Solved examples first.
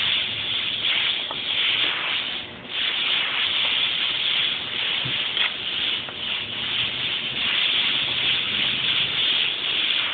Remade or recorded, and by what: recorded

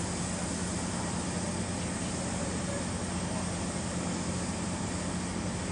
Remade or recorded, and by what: recorded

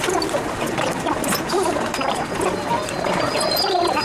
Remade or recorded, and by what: recorded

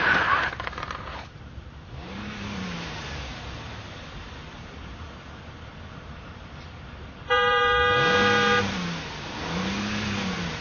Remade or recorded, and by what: remade, vocoder, BigVGAN v2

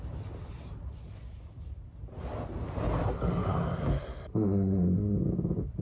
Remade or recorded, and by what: recorded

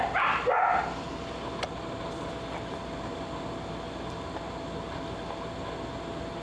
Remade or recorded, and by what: recorded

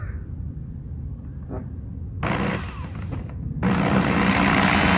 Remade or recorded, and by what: recorded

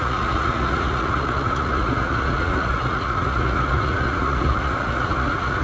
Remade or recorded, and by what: remade, vocoder, Vocos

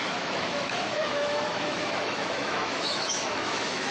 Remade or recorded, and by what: remade, autoencoder, DAC-VAE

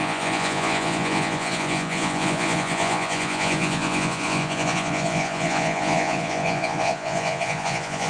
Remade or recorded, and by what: remade, vocoder, Vocos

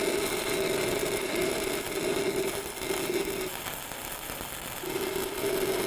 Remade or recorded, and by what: recorded